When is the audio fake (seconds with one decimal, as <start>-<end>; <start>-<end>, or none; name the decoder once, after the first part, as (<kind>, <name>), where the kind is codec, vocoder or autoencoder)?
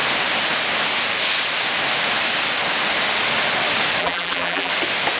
4.0-4.7 (vocoder, BigVGAN v2)